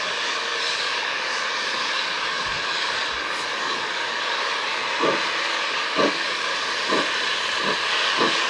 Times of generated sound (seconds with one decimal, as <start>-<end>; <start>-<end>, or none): 0.0-4.8; 5.4-6.5; 7.9-8.5